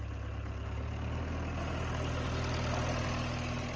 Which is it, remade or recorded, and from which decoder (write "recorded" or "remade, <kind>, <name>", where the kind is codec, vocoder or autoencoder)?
recorded